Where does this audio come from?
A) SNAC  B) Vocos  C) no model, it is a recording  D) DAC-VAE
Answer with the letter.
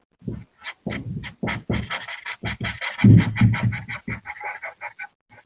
C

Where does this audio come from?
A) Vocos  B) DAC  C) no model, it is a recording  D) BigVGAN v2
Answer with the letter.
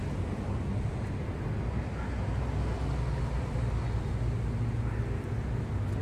C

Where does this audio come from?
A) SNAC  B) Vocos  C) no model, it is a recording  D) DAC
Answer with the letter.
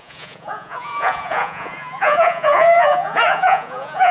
B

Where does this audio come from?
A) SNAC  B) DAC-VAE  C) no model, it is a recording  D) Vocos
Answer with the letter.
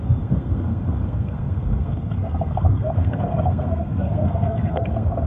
A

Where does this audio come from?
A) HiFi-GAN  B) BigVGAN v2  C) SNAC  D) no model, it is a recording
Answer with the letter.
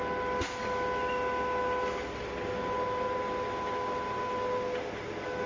D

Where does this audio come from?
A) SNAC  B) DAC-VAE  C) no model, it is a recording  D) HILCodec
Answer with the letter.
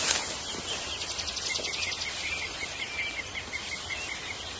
C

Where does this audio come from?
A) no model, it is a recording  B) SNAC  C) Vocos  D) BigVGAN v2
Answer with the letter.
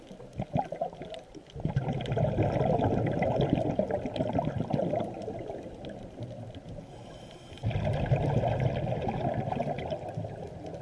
A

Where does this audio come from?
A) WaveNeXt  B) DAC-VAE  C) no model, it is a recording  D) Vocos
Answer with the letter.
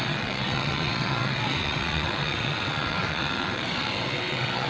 A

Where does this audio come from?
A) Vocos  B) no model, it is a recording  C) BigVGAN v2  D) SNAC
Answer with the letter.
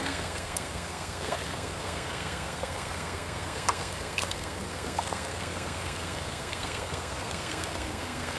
D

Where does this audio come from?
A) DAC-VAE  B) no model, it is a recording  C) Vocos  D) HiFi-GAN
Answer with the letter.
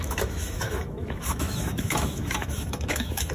A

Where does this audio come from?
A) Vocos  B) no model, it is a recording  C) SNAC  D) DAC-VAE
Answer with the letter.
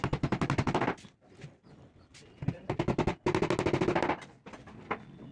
B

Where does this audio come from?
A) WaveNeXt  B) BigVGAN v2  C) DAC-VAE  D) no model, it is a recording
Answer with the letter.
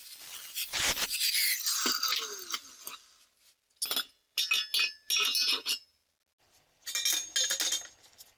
D